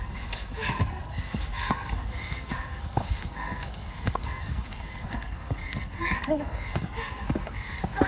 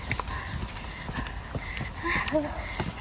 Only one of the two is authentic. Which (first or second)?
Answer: second